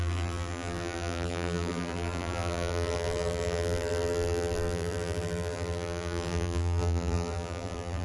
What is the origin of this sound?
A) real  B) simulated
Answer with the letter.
B